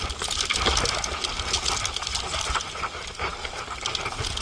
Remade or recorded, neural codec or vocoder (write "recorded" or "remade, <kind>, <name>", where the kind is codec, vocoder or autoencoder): recorded